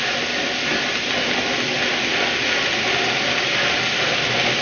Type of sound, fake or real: real